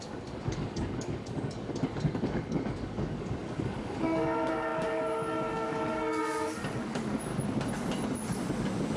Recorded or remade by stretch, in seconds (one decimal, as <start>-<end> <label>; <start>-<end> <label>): 0.0-7.3 remade; 7.3-9.0 recorded